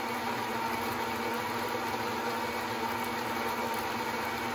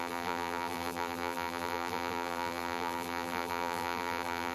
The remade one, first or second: second